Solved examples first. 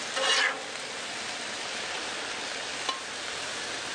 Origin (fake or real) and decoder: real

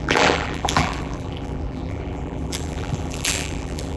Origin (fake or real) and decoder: fake, vocoder, BigVGAN v2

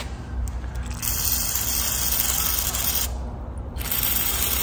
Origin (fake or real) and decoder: real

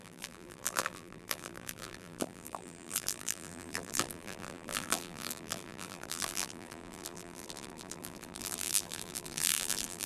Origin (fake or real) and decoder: fake, vocoder, BigVGAN v2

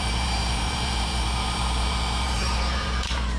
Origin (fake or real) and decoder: fake, vocoder, BigVGAN v2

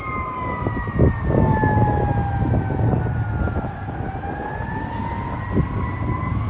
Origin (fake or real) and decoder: real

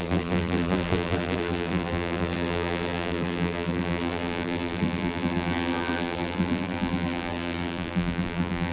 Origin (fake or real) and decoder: fake, vocoder, BigVGAN v2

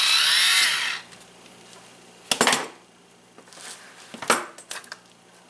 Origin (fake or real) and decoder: real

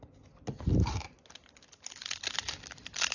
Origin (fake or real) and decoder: real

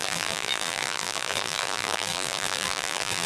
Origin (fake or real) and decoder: fake, vocoder, BigVGAN v2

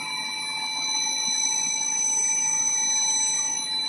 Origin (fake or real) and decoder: real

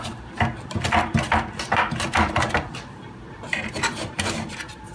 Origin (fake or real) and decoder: fake, vocoder, BigVGAN v2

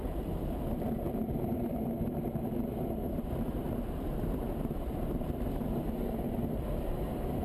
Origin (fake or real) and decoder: fake, vocoder, BigVGAN v2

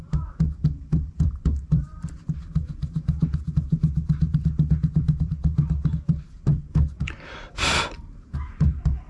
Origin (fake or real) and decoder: fake, vocoder, BigVGAN v2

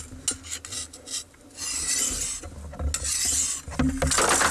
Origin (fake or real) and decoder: real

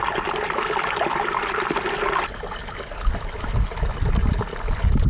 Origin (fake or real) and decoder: real